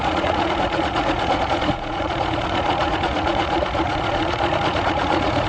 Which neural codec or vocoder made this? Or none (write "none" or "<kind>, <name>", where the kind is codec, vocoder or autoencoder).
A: vocoder, Vocos